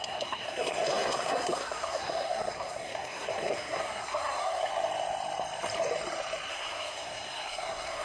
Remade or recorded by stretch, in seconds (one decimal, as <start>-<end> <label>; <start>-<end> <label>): 0.0-4.7 remade; 4.7-6.5 recorded; 6.5-8.0 remade